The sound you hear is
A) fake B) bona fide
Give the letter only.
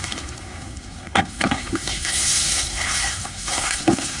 A